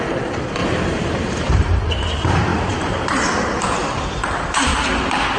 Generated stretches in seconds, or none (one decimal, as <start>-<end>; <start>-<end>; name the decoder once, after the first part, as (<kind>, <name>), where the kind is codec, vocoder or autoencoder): 0.0-4.7 (vocoder, BigVGAN v2)